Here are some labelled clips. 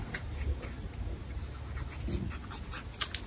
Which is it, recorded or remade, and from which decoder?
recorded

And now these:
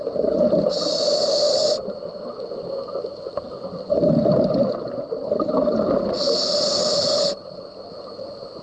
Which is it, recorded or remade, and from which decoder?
recorded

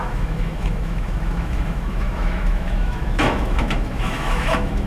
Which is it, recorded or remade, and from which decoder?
remade, autoencoder, DAC-VAE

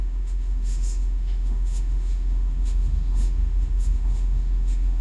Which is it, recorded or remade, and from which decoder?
remade, autoencoder, DAC-VAE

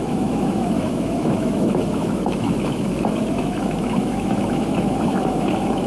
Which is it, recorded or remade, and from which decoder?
remade, autoencoder, DAC-VAE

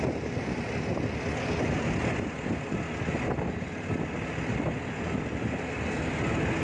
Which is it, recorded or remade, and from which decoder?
recorded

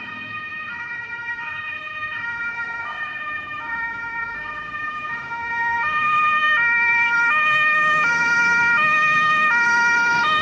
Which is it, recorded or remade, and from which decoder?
remade, autoencoder, DAC-VAE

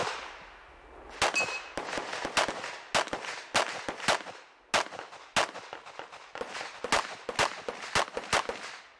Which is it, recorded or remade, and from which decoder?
recorded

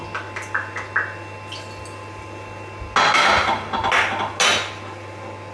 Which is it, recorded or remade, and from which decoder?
recorded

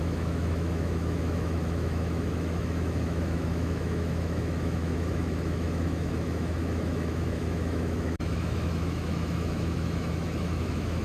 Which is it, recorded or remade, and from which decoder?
remade, autoencoder, DAC-VAE